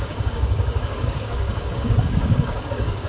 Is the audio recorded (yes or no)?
no